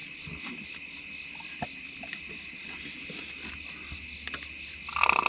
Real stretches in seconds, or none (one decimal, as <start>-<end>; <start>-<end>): 0.0-5.3